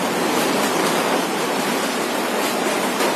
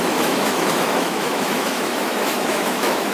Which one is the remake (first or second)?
second